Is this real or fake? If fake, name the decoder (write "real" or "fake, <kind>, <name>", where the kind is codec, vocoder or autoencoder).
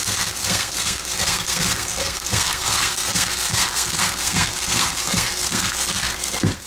fake, codec, SNAC